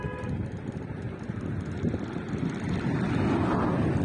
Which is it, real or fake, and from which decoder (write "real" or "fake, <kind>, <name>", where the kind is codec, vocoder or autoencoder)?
real